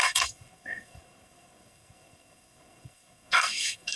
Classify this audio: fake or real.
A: fake